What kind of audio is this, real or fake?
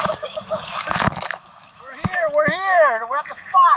fake